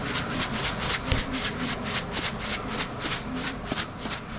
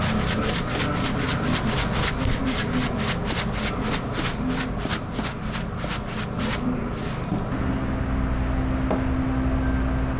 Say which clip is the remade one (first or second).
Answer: first